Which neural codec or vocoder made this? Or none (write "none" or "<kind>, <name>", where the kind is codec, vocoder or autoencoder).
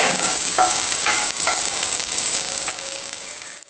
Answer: codec, DAC